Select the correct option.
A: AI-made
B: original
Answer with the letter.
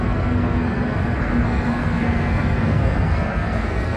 A